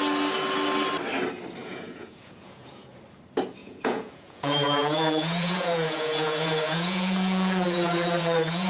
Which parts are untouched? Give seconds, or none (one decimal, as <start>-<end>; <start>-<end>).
0.0-1.6; 3.0-3.6